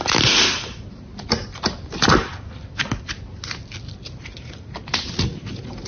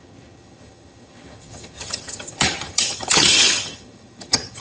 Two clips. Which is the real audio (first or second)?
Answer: first